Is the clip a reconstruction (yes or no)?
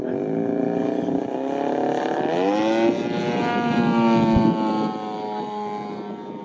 no